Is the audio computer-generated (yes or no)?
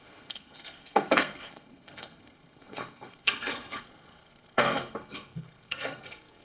yes